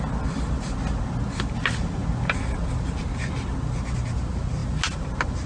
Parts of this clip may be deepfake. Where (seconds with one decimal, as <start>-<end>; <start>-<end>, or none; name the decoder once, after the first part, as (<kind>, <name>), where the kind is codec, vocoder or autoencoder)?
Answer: none